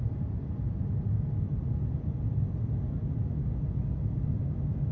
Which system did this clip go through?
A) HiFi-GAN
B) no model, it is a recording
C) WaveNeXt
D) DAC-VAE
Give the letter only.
B